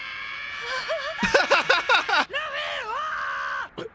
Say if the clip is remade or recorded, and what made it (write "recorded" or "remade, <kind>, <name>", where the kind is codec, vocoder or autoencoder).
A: recorded